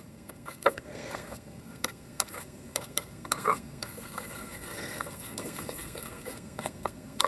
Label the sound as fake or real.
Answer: fake